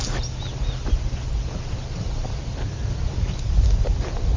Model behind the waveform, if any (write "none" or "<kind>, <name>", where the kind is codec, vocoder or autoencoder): none